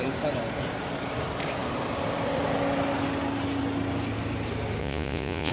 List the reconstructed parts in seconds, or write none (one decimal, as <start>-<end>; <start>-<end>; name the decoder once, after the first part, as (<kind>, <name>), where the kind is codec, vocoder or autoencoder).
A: 4.8-5.5 (vocoder, Vocos)